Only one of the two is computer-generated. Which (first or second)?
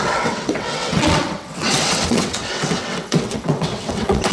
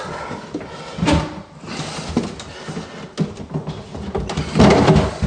first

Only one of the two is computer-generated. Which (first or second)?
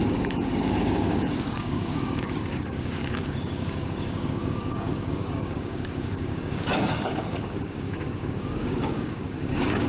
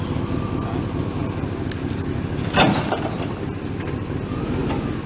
first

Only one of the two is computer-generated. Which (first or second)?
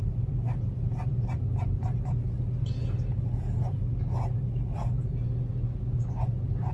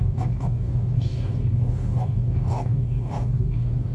second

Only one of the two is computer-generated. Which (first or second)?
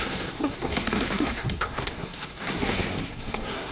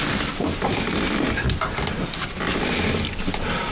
first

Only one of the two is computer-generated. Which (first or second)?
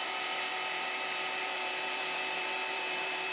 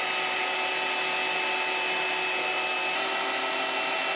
first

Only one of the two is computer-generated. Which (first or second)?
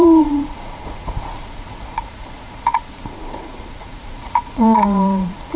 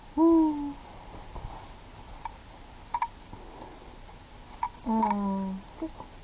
first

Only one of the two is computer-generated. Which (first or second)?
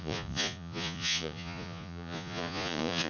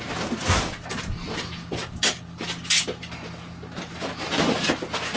first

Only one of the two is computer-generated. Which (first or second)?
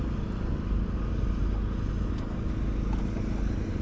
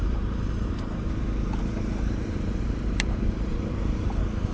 second